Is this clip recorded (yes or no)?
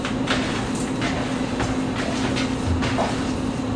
yes